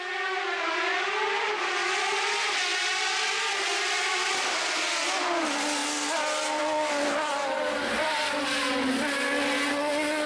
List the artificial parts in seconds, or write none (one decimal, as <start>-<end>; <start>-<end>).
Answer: none